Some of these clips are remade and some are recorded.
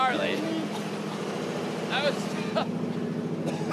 recorded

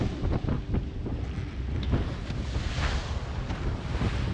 recorded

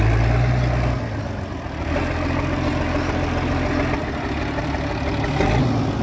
recorded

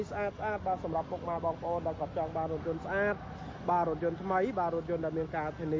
recorded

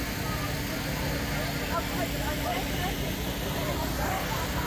recorded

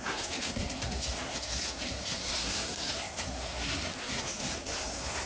remade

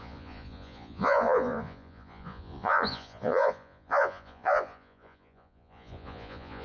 remade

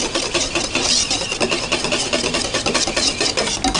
recorded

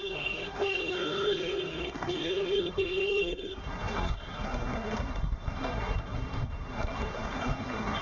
remade